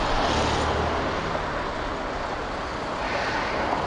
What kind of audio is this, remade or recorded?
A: recorded